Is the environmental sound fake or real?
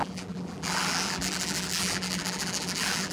fake